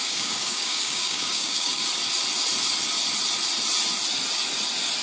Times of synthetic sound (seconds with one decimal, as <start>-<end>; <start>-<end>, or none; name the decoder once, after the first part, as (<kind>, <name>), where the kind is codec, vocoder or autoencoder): 0.0-1.8 (codec, DAC)